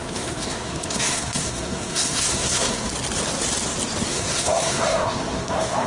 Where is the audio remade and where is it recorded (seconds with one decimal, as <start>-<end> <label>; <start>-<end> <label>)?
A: 0.0-2.9 remade; 2.9-4.1 recorded; 4.1-5.9 remade